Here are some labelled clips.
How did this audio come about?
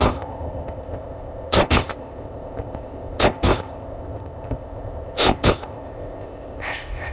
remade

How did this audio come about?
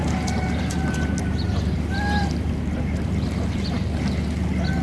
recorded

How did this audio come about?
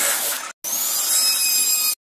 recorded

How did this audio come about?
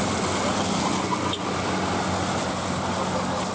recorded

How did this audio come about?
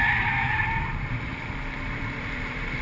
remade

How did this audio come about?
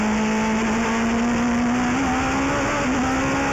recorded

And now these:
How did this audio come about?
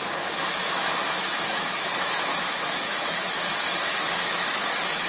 remade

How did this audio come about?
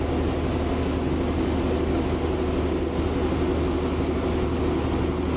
recorded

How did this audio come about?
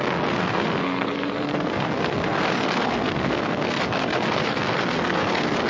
remade